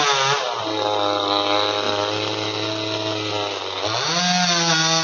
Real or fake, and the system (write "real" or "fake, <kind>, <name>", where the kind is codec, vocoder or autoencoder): real